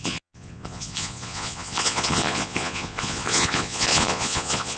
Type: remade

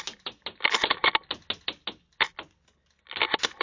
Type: recorded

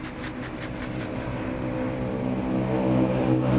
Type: recorded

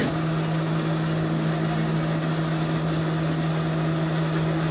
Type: recorded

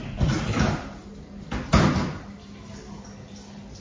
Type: recorded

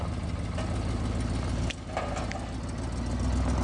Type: recorded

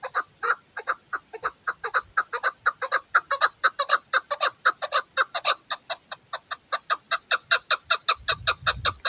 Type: recorded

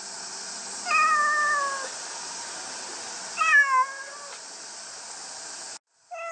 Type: recorded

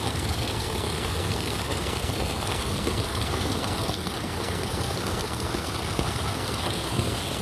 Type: remade